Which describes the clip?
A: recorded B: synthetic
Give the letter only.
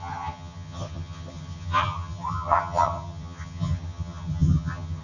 B